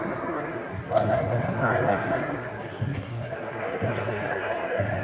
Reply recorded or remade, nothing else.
remade